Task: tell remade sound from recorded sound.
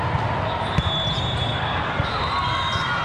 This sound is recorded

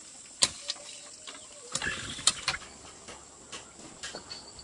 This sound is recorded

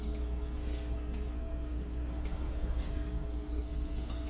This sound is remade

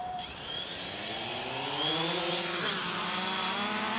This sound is remade